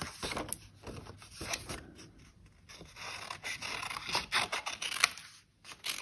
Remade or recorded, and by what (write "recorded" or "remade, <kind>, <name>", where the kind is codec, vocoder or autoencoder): recorded